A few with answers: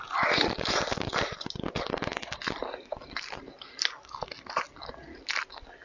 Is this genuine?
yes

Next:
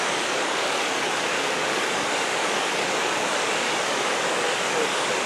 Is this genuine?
no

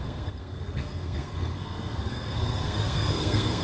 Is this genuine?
no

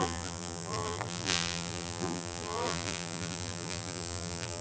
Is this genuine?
no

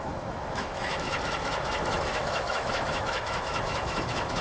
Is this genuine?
no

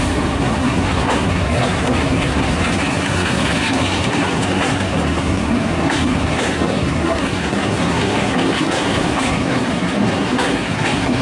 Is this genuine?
no